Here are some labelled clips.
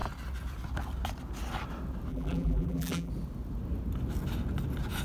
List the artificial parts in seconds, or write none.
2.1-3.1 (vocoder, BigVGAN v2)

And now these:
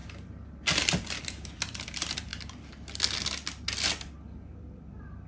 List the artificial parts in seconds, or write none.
1.2-2.3 (vocoder, BigVGAN v2); 4.5-5.3

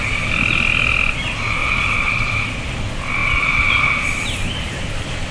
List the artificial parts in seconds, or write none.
1.6-2.8 (vocoder, BigVGAN v2); 3.2-3.8